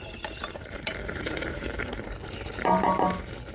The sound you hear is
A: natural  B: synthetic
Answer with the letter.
B